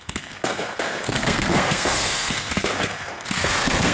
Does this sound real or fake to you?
fake